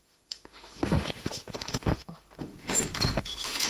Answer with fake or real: fake